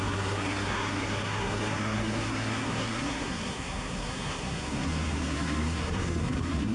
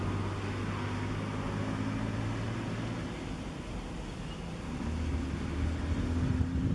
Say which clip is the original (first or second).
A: second